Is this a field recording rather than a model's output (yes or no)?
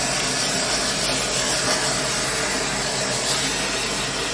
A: yes